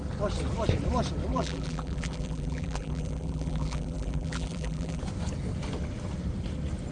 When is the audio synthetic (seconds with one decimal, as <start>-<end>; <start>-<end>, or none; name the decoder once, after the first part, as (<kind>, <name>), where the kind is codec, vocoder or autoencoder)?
1.3-5.0 (vocoder, BigVGAN v2)